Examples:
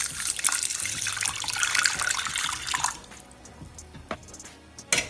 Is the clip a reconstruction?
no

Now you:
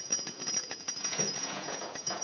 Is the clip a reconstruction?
yes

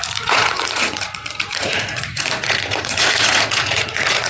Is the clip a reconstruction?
yes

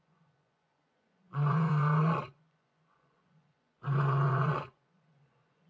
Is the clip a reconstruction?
yes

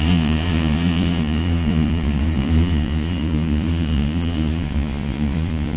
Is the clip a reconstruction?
yes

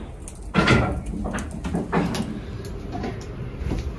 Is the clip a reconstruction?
no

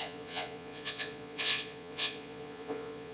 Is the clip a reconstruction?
yes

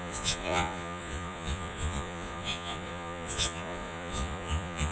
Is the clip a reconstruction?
yes